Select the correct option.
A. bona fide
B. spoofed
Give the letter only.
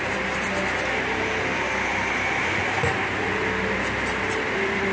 A